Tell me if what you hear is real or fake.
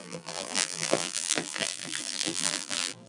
fake